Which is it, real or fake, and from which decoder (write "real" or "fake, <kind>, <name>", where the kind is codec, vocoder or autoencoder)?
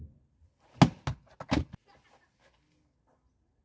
real